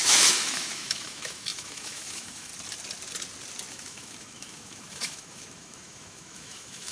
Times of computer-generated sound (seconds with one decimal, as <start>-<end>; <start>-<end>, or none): 0.0-2.5; 3.7-6.9